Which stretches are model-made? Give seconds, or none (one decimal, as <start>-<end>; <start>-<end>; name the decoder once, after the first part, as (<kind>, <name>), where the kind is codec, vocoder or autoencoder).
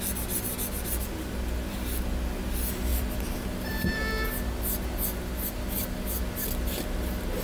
2.9-4.1 (vocoder, BigVGAN v2)